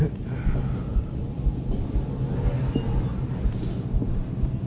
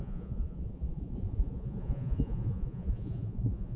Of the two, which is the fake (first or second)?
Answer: second